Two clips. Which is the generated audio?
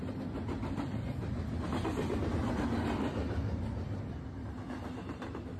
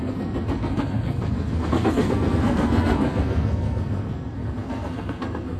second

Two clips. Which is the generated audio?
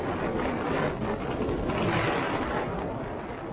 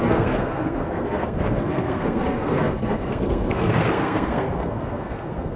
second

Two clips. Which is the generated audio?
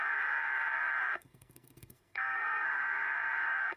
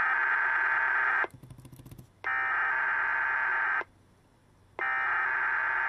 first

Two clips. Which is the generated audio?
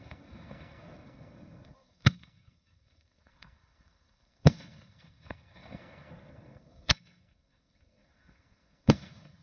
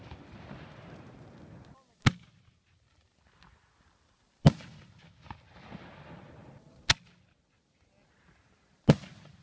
first